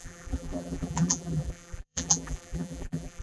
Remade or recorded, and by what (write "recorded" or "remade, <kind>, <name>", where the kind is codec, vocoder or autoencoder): remade, vocoder, BigVGAN v2